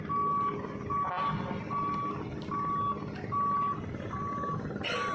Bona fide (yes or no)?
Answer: yes